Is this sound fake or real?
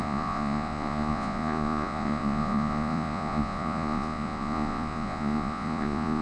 fake